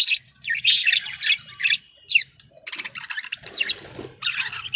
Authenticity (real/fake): real